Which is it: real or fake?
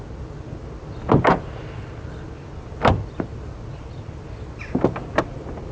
real